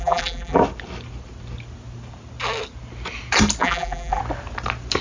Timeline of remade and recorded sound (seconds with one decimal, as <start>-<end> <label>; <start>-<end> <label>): 0.0-0.6 remade; 0.6-3.6 recorded; 3.6-4.2 remade; 4.2-5.0 recorded